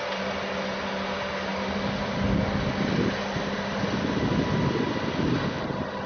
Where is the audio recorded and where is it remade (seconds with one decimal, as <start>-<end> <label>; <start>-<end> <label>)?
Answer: 0.0-6.1 recorded

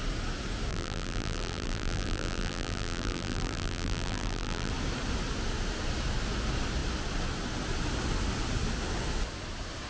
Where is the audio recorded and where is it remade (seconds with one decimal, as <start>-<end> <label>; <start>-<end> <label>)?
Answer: 0.0-0.7 recorded; 0.7-4.7 remade; 4.7-9.9 recorded

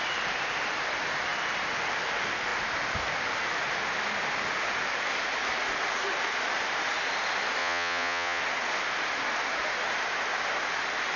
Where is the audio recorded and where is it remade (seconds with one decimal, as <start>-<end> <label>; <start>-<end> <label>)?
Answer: 0.0-7.6 recorded; 7.6-8.4 remade; 8.4-11.2 recorded

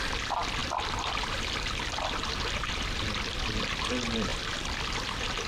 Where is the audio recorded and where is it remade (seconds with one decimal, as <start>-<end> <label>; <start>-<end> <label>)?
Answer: 0.0-0.6 recorded; 0.6-3.6 remade; 3.6-4.3 recorded; 4.3-5.5 remade

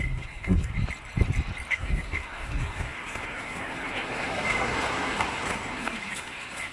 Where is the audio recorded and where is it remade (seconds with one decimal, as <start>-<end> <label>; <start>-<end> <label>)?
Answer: 0.0-0.7 remade; 0.7-1.7 recorded; 1.7-6.7 remade

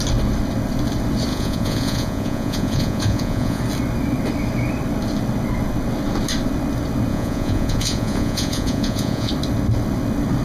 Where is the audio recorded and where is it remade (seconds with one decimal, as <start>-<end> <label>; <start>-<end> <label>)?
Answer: 0.0-1.3 recorded; 1.3-3.6 remade; 3.6-7.1 recorded; 7.1-9.3 remade; 9.3-10.4 recorded

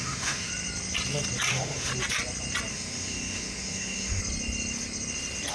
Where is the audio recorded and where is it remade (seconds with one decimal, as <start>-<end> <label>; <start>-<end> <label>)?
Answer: 0.0-0.5 remade; 0.5-1.5 recorded; 1.5-1.9 remade; 1.9-2.7 recorded; 2.7-4.2 remade; 4.2-5.5 recorded

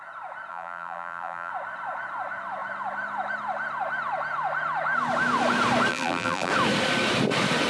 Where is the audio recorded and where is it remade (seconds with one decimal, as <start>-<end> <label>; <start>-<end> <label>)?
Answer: 0.0-0.5 recorded; 0.5-1.5 remade; 1.5-5.9 recorded; 5.9-6.5 remade; 6.5-7.7 recorded